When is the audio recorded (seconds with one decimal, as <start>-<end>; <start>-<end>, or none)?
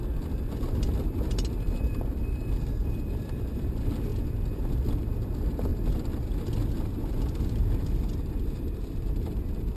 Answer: 4.1-4.7; 5.7-7.1